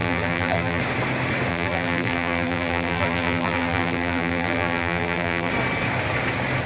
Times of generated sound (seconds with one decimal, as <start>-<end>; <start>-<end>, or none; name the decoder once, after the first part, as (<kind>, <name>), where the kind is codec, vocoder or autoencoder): 0.0-0.8 (vocoder, BigVGAN v2); 1.5-5.5